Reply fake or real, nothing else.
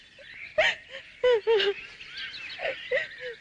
real